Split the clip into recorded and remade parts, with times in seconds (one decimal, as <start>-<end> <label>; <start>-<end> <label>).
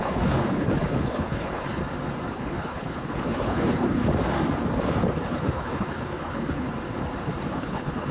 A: 0.0-1.8 remade; 1.8-2.3 recorded; 2.3-4.0 remade; 4.0-5.3 recorded; 5.3-6.7 remade; 6.7-7.5 recorded; 7.5-8.1 remade